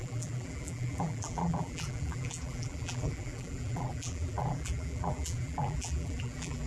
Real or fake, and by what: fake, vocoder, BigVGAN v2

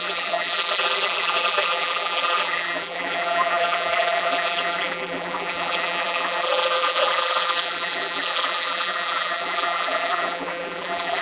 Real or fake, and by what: fake, vocoder, BigVGAN v2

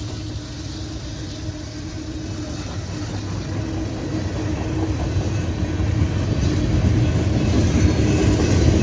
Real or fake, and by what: real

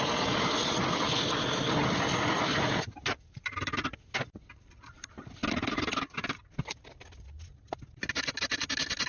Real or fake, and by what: real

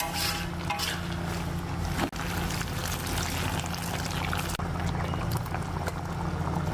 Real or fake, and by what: real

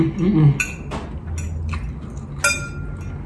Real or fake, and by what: real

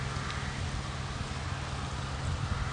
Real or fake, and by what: real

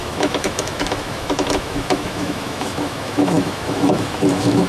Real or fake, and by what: fake, autoencoder, DAC-VAE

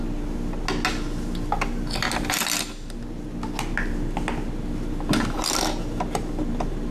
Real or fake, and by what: real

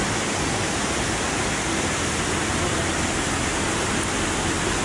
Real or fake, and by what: real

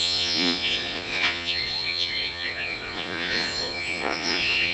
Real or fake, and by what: fake, vocoder, Vocos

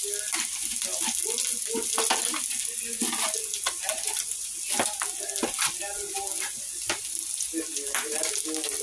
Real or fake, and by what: real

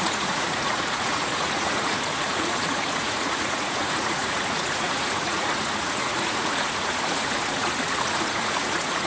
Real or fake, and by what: fake, vocoder, Vocos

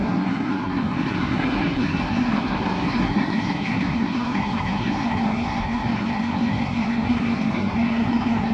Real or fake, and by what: fake, codec, SNAC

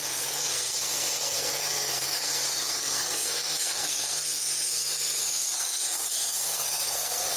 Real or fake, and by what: fake, codec, SNAC